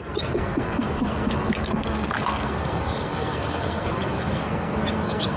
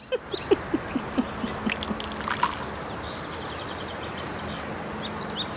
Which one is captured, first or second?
second